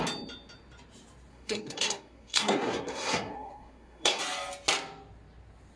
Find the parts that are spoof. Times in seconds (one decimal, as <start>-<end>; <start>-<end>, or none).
1.3-4.2